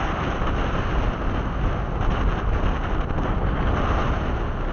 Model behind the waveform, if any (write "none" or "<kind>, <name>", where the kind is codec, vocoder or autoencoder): none